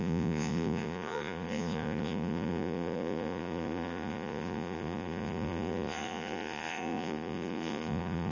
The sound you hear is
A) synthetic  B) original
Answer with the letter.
A